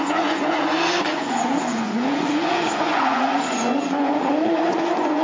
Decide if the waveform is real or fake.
fake